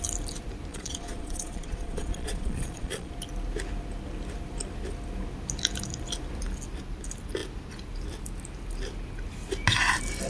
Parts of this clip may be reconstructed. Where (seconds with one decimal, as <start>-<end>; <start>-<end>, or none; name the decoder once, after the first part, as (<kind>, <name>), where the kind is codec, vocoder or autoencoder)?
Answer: 0.7-3.1 (vocoder, Vocos)